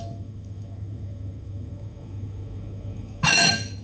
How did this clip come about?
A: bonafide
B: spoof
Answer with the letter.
B